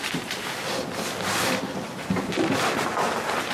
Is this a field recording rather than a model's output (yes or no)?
no